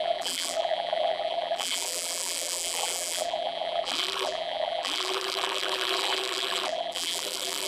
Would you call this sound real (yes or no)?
no